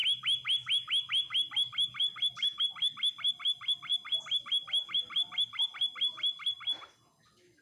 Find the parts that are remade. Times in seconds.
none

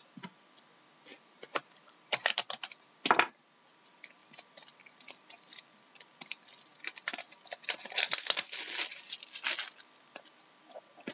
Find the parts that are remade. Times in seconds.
1.1-2.9 (vocoder, BigVGAN v2)

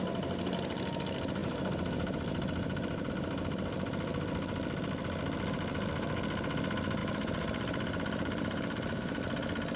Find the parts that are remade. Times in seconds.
1.4-3.1 (vocoder, BigVGAN v2); 7.0-9.2

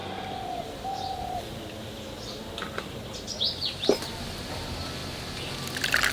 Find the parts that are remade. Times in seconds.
0.0-1.4 (vocoder, BigVGAN v2)

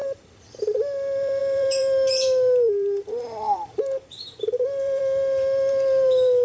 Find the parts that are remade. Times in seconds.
0.0-6.4 (vocoder, BigVGAN v2)

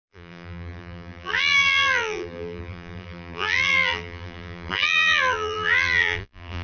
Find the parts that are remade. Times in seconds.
0.0-6.6 (vocoder, BigVGAN v2)

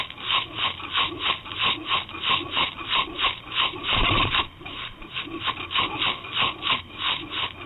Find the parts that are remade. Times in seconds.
2.6-5.4 (vocoder, BigVGAN v2)

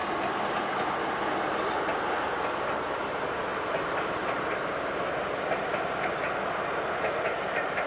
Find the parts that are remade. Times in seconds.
none